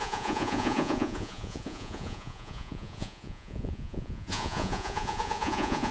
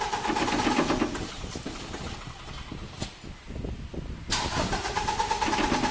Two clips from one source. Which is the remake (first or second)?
first